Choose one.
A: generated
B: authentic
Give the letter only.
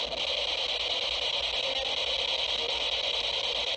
B